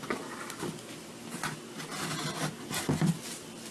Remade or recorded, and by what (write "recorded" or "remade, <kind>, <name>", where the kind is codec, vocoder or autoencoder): recorded